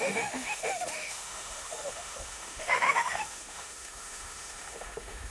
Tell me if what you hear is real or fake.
fake